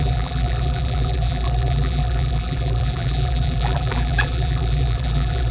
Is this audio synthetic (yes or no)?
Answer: yes